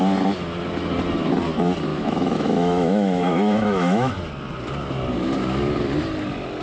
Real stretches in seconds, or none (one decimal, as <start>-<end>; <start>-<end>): 0.0-1.9; 4.1-6.6